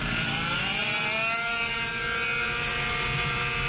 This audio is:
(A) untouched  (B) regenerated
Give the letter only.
A